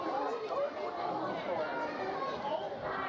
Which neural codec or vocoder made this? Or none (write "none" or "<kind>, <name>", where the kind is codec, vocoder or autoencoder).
none